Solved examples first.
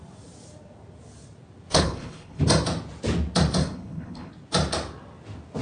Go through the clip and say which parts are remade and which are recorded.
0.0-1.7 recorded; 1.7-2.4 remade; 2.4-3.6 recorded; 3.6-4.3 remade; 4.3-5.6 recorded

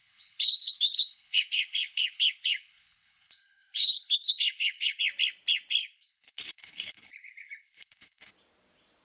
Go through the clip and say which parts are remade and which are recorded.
0.0-5.0 remade; 5.0-5.8 recorded; 5.8-8.3 remade; 8.3-9.0 recorded